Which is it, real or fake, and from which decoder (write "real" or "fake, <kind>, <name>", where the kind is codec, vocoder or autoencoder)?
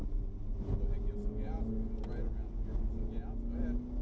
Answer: real